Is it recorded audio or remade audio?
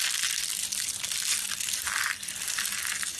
recorded